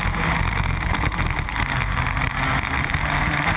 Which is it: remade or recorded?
recorded